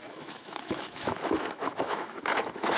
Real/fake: fake